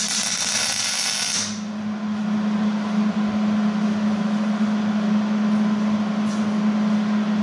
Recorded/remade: recorded